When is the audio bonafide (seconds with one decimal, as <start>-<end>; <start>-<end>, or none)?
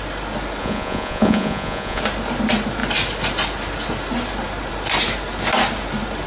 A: 0.0-0.6; 2.0-6.3